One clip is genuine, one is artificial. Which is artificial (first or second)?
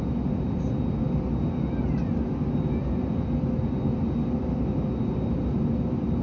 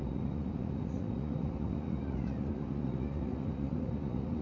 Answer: second